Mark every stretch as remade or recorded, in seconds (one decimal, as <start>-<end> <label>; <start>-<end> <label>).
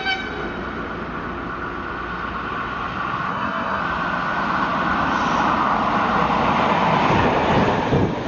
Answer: 0.0-3.3 recorded; 3.3-3.8 remade; 3.8-8.3 recorded